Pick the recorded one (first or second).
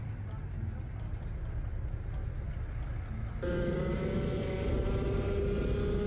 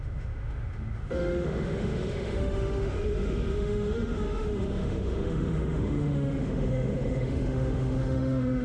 first